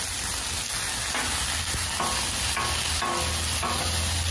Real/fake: real